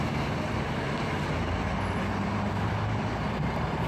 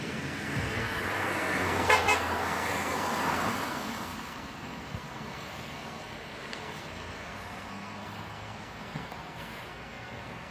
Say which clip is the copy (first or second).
second